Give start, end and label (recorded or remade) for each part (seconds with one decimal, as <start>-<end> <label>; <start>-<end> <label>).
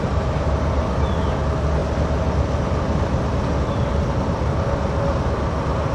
0.0-5.9 recorded